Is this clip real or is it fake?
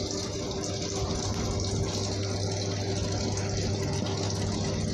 real